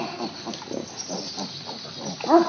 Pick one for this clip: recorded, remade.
recorded